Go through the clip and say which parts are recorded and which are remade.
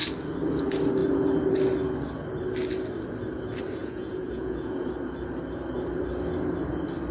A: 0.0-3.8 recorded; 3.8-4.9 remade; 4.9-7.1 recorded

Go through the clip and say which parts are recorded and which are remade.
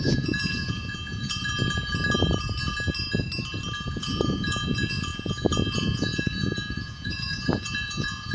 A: 0.0-1.5 remade; 1.5-3.9 recorded; 3.9-8.3 remade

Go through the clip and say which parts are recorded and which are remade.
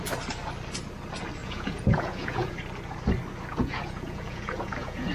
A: 0.0-1.4 recorded; 1.4-2.5 remade; 2.5-3.5 recorded; 3.5-5.1 remade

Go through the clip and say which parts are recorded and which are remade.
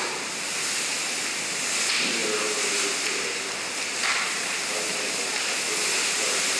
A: 0.0-6.6 recorded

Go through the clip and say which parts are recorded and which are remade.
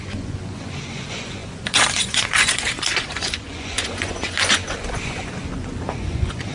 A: 0.0-6.5 remade